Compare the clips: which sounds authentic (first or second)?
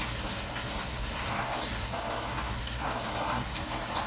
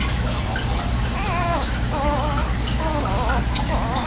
second